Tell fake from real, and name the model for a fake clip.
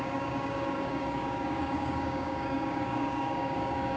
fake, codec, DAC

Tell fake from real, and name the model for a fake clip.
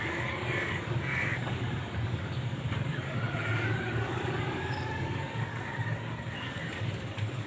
fake, codec, DAC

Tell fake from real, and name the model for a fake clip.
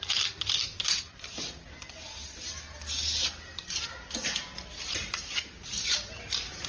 real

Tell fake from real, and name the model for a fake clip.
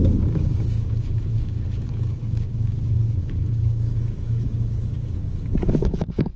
fake, codec, DAC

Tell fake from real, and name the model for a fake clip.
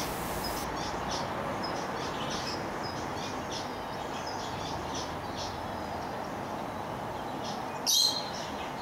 real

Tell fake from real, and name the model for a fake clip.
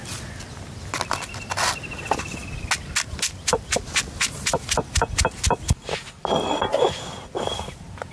real